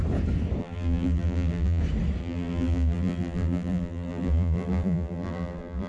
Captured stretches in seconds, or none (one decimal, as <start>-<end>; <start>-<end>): 0.0-0.6; 1.8-2.2